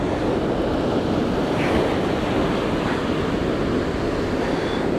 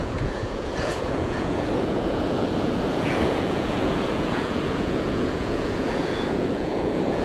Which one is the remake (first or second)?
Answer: second